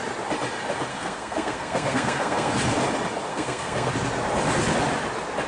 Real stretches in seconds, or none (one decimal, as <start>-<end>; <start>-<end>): 0.0-0.9; 2.5-3.3; 3.9-5.5